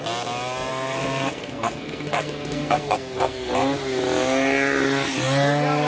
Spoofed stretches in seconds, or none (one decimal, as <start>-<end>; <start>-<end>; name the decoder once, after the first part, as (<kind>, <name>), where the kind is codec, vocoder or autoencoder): 0.7-3.5 (codec, SNAC)